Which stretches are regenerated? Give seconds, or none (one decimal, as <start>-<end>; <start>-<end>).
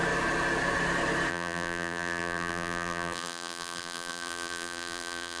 1.3-5.4